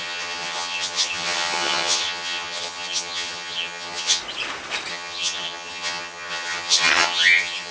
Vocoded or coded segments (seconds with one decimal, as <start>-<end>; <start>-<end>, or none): 0.0-4.2; 4.9-7.7